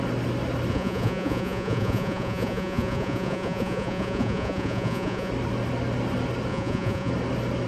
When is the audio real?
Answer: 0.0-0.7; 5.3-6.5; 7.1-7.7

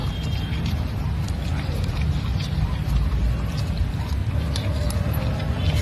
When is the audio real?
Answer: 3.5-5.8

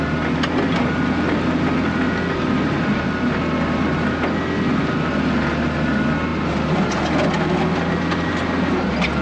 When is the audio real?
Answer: 0.0-9.2

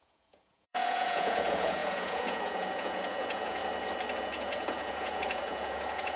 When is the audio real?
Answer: 3.6-4.2